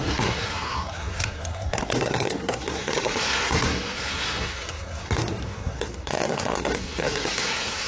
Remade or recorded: remade